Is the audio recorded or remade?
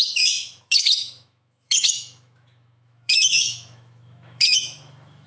remade